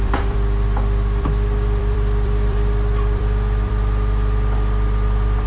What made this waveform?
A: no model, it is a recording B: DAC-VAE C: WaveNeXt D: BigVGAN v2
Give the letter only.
D